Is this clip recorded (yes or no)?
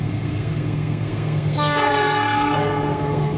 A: no